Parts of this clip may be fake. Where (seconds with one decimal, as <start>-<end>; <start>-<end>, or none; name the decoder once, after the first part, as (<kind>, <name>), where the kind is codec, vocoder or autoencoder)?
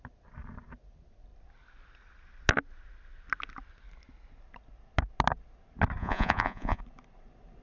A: 6.0-6.8 (vocoder, Vocos)